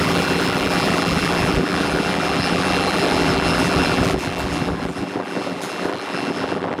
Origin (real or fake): fake